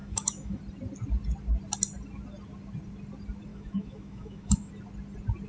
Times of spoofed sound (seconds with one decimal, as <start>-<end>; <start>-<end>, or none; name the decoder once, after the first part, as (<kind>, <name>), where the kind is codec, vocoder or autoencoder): 0.0-0.6 (autoencoder, DAC-VAE); 3.5-4.7